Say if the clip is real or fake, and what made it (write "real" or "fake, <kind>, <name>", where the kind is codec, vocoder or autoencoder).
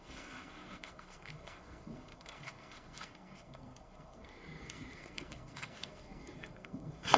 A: fake, codec, SNAC